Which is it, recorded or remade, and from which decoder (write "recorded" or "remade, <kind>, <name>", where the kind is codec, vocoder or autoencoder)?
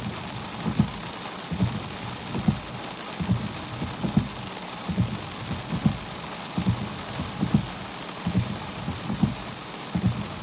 recorded